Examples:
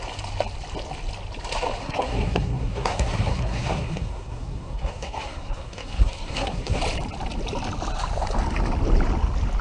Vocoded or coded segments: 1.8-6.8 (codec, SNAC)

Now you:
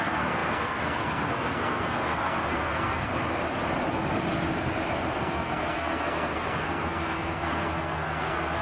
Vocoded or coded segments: 0.0-3.1 (codec, SNAC); 5.2-8.6